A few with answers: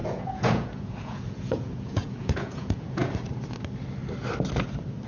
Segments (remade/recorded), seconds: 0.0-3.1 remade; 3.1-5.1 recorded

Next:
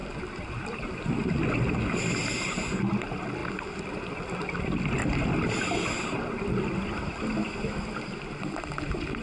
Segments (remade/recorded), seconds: 0.0-9.2 recorded